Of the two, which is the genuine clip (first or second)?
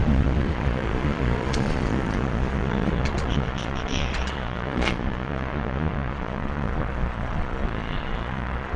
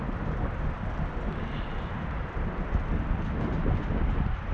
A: second